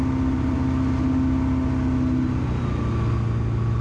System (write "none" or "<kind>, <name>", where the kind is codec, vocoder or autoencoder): none